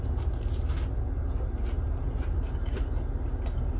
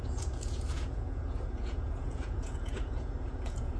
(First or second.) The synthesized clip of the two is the second